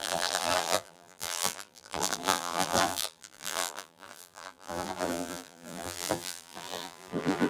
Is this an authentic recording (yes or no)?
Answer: no